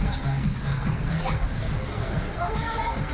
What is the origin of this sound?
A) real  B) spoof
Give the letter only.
B